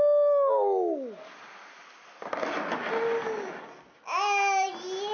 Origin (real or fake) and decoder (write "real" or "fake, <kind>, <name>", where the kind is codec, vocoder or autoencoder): real